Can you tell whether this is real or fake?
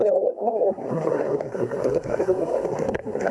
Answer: fake